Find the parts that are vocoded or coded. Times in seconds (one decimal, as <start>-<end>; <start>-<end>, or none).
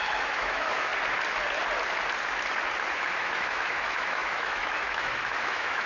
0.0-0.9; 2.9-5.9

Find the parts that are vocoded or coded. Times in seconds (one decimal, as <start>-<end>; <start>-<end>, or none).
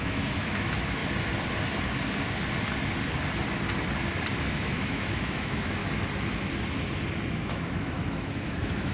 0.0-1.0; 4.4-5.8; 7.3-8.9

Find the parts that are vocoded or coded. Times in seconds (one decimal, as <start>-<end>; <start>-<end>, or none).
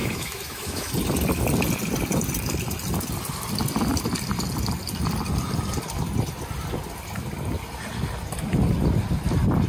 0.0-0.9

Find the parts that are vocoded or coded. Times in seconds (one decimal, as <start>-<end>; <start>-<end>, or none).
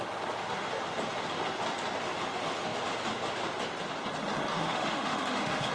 4.5-5.7